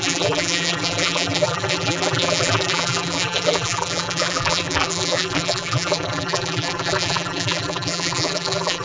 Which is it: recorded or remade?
remade